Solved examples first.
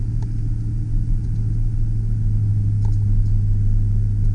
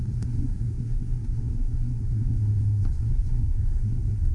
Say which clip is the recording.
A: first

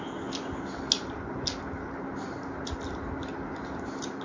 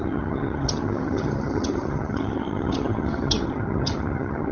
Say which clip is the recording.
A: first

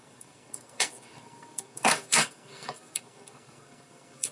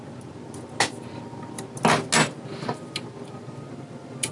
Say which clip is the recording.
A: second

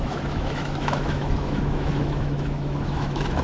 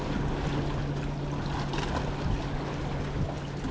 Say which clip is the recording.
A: second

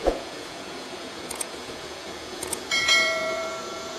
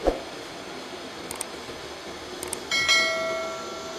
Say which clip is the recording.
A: second